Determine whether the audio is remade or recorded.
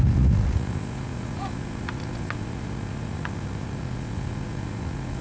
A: remade